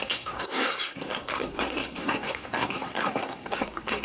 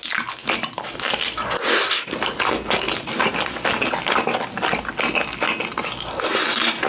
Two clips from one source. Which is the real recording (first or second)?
second